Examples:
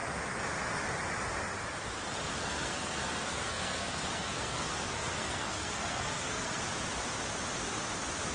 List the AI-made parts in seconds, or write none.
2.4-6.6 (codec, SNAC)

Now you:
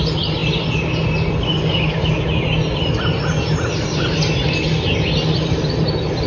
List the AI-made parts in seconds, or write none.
3.9-4.5 (vocoder, BigVGAN v2)

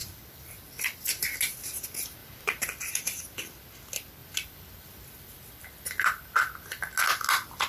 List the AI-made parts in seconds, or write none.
0.0-1.1 (vocoder, BigVGAN v2); 2.2-2.9; 4.2-6.9